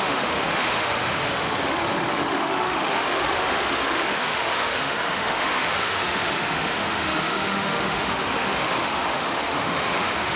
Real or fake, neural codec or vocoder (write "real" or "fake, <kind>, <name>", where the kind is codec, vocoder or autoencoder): fake, autoencoder, DAC-VAE